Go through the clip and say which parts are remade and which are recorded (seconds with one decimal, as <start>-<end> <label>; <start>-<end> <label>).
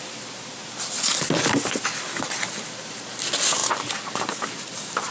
0.0-3.6 recorded; 3.6-5.1 remade